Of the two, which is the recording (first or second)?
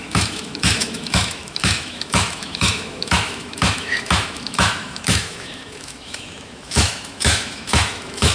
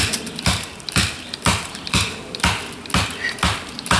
second